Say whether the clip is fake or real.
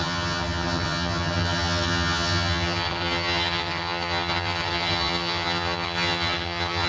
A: fake